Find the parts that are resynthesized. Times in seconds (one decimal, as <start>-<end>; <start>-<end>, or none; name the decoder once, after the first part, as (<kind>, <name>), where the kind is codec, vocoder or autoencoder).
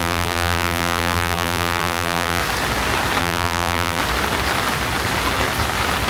0.0-2.4 (vocoder, BigVGAN v2); 3.2-4.0